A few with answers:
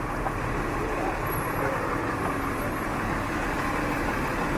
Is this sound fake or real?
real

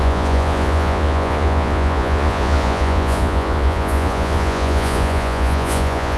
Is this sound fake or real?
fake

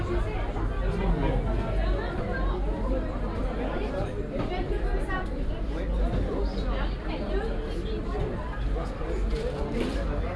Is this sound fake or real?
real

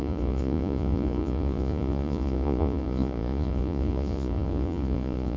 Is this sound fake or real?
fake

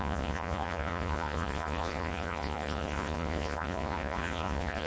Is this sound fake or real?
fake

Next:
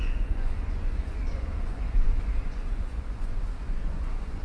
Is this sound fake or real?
fake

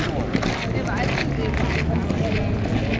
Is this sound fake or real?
real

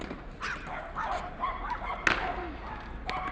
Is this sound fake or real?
real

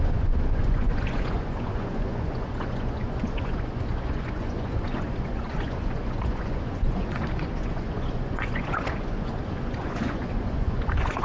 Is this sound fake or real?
fake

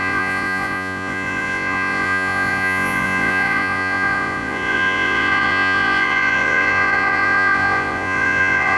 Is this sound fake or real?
fake